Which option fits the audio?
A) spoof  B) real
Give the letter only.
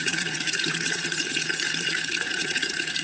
A